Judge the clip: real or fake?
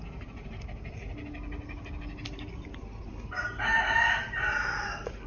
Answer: real